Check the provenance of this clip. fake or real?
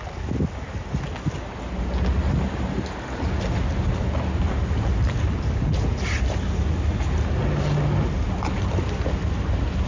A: real